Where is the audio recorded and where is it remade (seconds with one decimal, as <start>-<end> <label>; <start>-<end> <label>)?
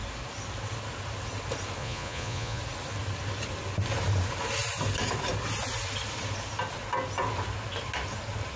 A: 0.0-1.8 recorded; 1.8-2.6 remade; 2.6-8.6 recorded